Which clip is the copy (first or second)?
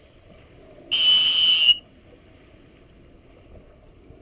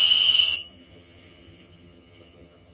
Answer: second